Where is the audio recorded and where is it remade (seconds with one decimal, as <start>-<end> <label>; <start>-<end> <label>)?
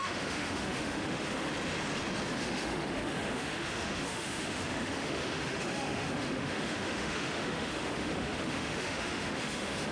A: 0.0-1.5 remade; 1.5-2.3 recorded; 2.3-9.9 remade